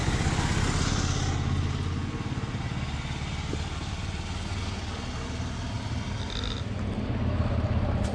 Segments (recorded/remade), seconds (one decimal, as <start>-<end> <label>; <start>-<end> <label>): 0.0-0.9 remade; 0.9-8.1 recorded